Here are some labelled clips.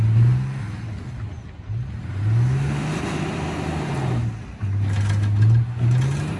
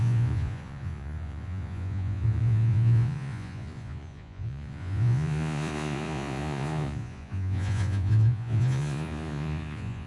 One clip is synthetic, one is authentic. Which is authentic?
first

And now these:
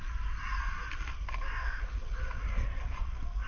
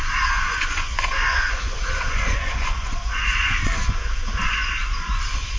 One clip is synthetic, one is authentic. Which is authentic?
first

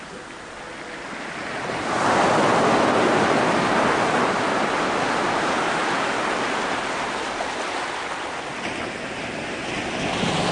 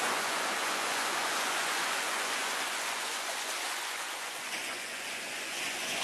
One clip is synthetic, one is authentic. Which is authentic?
first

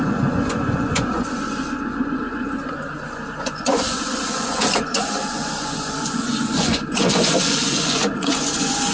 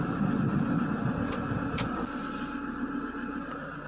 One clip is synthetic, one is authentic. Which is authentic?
second